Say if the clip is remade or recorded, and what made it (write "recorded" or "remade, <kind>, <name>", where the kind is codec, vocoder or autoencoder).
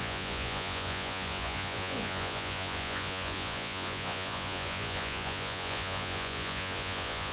remade, vocoder, Vocos